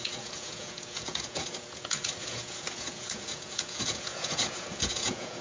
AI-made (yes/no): yes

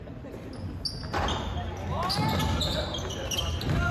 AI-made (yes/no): no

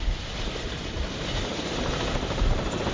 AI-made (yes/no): no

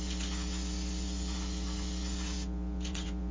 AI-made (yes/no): yes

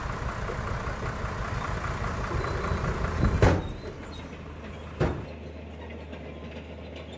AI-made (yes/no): no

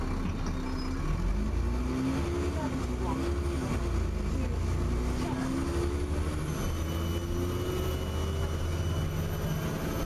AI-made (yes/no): no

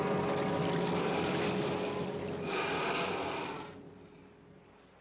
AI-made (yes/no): no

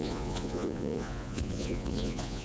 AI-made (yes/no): yes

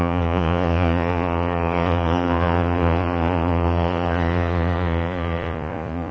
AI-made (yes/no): yes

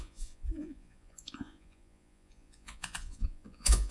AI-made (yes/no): yes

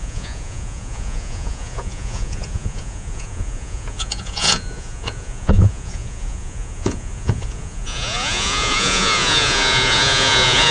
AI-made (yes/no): yes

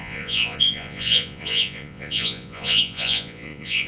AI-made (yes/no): yes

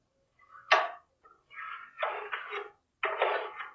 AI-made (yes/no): no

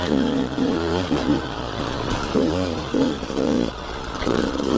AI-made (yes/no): yes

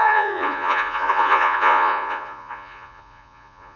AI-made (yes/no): yes